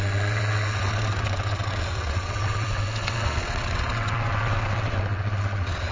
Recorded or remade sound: remade